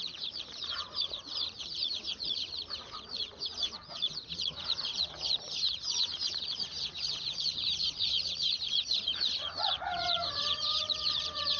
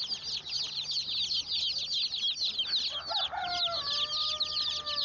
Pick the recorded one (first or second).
second